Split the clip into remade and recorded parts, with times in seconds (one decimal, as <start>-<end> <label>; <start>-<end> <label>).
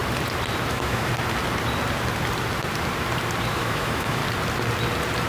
0.0-0.7 recorded; 0.7-1.1 remade; 1.1-3.5 recorded; 3.5-4.2 remade; 4.2-5.3 recorded